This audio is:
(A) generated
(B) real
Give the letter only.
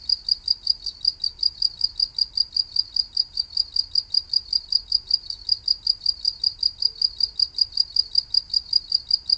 B